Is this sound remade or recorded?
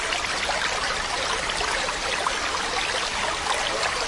recorded